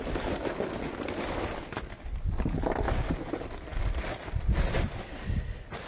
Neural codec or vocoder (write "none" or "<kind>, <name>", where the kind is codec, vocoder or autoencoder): none